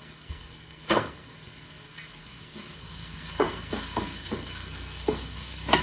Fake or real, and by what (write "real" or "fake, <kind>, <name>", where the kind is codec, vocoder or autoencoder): fake, codec, SNAC